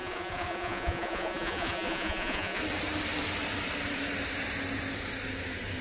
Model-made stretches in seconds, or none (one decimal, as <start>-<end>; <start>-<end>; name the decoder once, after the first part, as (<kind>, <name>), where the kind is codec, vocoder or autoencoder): 0.0-2.6 (vocoder, Vocos)